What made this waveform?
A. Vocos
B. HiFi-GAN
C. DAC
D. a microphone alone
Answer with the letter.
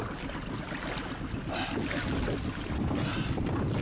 D